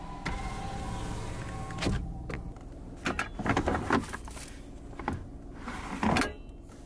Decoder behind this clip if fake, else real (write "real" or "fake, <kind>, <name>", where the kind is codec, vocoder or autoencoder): real